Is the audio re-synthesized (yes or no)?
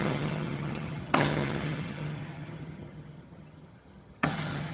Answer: yes